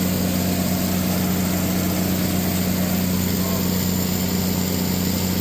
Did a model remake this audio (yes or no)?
no